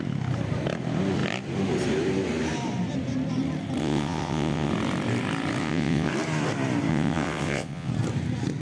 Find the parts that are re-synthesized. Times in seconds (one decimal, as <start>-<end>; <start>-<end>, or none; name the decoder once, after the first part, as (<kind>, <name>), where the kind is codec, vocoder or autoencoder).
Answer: 3.8-4.7 (vocoder, WaveNeXt); 5.6-6.1; 6.9-7.9